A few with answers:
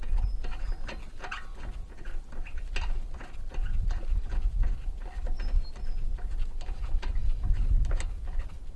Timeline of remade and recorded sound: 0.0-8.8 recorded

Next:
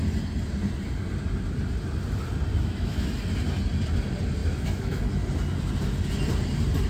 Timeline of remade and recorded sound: 0.0-2.5 recorded; 2.5-3.1 remade; 3.1-4.4 recorded; 4.4-5.0 remade; 5.0-6.9 recorded

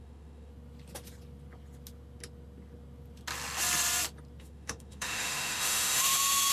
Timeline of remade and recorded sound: 0.0-0.5 remade; 0.5-4.4 recorded; 4.4-6.5 remade

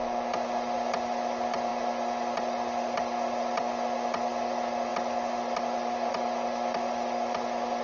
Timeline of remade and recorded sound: 0.0-7.8 recorded

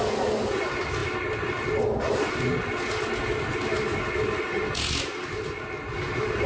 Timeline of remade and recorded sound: 0.0-6.5 recorded